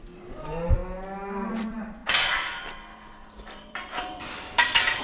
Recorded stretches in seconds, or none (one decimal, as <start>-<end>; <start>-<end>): 0.8-1.5